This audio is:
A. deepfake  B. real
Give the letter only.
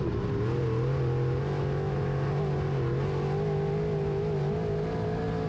B